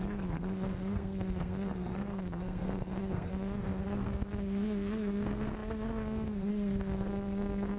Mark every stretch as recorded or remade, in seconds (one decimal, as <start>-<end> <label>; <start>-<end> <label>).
0.0-7.8 remade